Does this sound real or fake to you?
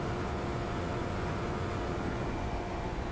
fake